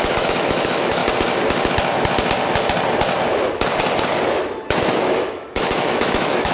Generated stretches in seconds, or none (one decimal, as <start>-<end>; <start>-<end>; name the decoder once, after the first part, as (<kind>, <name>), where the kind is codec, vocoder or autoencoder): 0.0-1.0 (autoencoder, DAC-VAE); 4.8-6.5

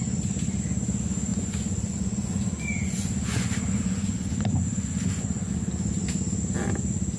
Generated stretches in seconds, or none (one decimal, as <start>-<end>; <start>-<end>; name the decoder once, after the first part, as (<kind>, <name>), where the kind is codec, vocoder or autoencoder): 1.3-5.5 (vocoder, Vocos)